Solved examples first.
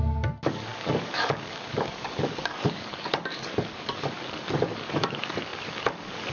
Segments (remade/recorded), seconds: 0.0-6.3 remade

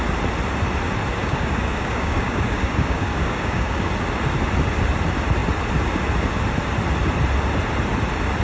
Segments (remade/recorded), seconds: 0.0-1.2 recorded; 1.2-3.9 remade; 3.9-8.4 recorded

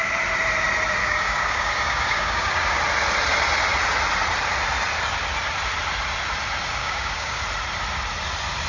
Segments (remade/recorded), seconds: 0.0-1.0 recorded; 1.0-2.8 remade; 2.8-6.8 recorded; 6.8-7.4 remade; 7.4-8.7 recorded

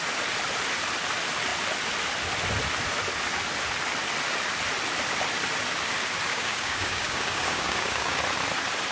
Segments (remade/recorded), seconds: 0.0-6.3 recorded; 6.3-8.2 remade; 8.2-8.9 recorded

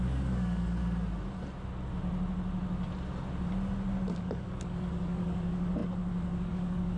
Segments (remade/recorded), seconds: 0.0-0.8 remade; 0.8-4.1 recorded; 4.1-7.0 remade

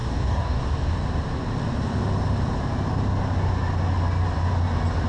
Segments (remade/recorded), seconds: 0.0-0.6 remade; 0.6-5.1 recorded

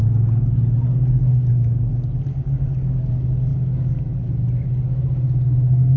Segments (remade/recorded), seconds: 0.0-1.2 recorded; 1.2-1.9 remade; 1.9-2.3 recorded; 2.3-3.1 remade; 3.1-6.0 recorded

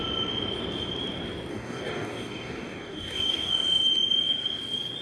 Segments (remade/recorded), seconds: 0.0-1.5 recorded; 1.5-3.5 remade; 3.5-5.0 recorded